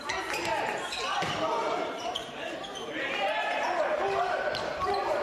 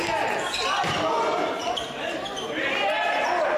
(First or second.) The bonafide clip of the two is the second